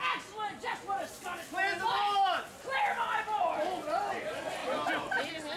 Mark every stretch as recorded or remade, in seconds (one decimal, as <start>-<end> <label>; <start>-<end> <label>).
0.0-5.6 recorded